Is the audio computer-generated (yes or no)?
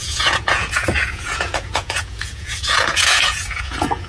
yes